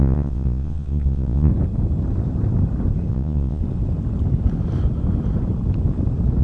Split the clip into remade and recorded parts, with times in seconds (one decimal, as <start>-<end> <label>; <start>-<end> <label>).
0.0-1.5 remade; 1.5-3.1 recorded; 3.1-3.6 remade; 3.6-6.4 recorded